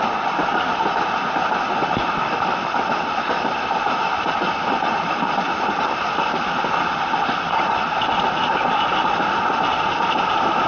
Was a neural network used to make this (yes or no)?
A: no